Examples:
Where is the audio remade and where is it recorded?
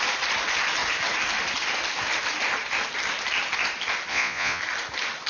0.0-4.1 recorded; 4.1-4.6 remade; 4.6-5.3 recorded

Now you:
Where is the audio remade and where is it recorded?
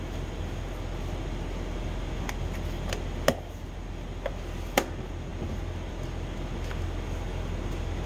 0.0-8.1 recorded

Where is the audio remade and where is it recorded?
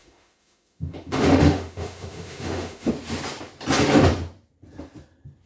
0.0-2.9 remade; 2.9-5.5 recorded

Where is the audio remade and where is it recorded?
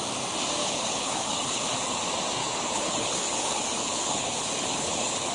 0.0-0.6 recorded; 0.6-2.0 remade; 2.0-2.4 recorded; 2.4-5.3 remade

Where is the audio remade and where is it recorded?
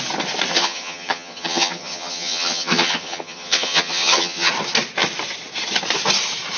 0.0-0.5 recorded; 0.5-4.5 remade; 4.5-6.6 recorded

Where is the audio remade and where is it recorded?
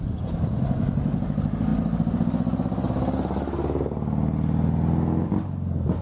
0.0-6.0 recorded